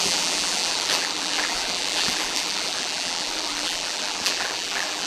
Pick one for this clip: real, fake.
fake